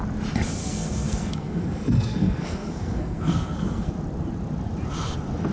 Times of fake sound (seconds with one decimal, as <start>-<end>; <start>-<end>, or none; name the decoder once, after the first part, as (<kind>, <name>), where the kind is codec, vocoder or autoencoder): 0.6-3.9 (codec, SNAC)